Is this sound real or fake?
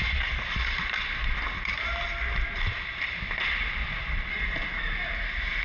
real